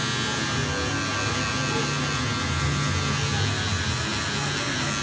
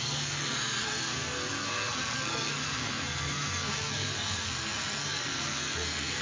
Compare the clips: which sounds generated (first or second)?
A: second